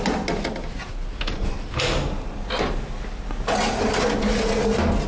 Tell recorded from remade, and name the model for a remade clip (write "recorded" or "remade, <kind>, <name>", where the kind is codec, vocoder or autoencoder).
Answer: recorded